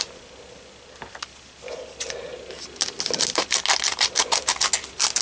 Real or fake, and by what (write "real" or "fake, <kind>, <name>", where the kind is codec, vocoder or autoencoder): real